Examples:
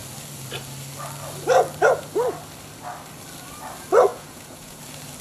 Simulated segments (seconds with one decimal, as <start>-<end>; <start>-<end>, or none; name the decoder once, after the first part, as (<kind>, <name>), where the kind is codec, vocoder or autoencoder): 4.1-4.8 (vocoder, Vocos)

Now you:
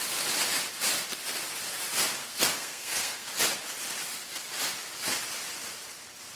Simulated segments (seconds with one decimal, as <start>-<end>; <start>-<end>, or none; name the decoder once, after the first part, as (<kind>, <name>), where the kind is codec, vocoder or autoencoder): 2.2-3.3 (codec, SNAC)

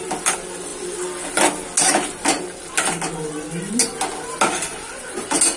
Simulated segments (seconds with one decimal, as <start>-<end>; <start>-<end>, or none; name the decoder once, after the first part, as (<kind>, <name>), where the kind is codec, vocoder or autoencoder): none

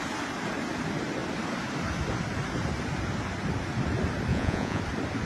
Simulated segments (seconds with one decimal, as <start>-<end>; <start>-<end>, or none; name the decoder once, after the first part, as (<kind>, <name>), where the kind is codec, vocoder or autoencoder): 4.3-4.8 (vocoder, Vocos)

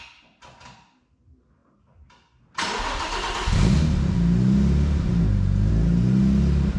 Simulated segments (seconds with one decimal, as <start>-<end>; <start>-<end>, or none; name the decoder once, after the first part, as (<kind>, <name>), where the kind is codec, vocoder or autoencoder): none

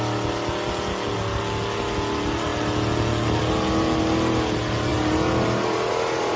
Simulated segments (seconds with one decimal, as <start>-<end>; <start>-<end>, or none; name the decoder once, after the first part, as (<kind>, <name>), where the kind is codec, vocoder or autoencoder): none